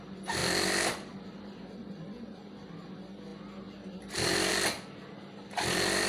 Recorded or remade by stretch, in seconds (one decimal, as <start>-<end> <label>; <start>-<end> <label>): 0.0-6.1 recorded